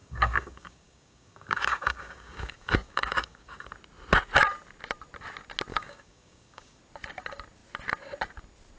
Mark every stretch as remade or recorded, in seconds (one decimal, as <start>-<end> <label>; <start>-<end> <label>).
0.0-3.7 remade; 3.7-5.7 recorded; 5.7-6.8 remade; 6.8-8.8 recorded